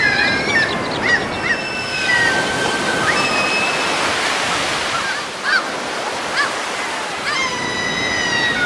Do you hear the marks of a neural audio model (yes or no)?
no